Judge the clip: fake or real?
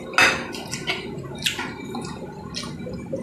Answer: real